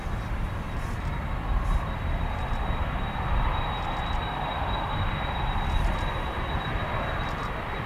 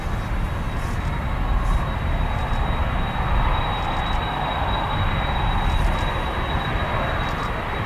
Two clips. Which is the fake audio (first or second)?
first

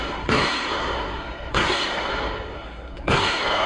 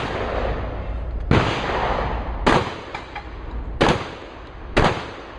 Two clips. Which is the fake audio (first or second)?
first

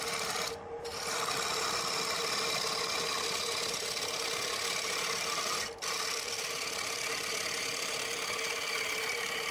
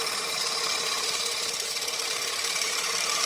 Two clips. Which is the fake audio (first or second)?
second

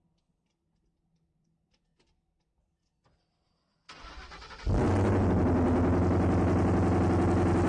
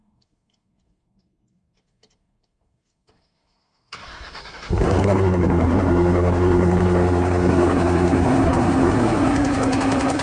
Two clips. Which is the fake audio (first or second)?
second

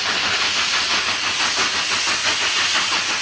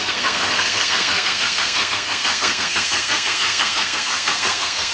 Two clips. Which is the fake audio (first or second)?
second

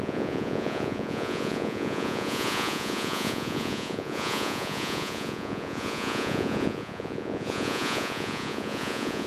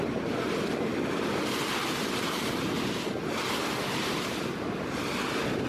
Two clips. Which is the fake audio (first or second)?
first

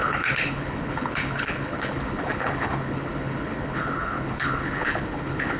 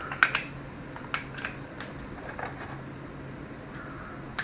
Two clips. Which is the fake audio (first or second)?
first